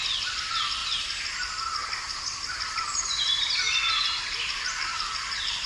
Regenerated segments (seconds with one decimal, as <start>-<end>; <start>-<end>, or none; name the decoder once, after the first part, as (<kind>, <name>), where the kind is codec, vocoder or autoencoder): 4.9-5.7 (vocoder, BigVGAN v2)